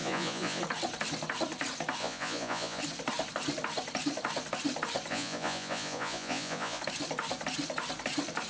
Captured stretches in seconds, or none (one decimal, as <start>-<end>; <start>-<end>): 0.6-2.0; 2.8-5.1; 6.8-8.5